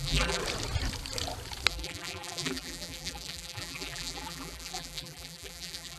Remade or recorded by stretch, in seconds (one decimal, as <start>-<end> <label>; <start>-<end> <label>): 0.0-0.4 remade; 0.4-1.7 recorded; 1.7-6.0 remade

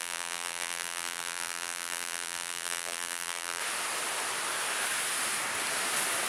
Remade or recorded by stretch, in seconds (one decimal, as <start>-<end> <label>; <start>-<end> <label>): 0.0-3.6 remade; 3.6-6.3 recorded